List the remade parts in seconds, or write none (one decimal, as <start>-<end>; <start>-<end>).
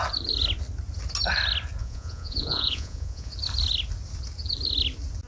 1.8-3.3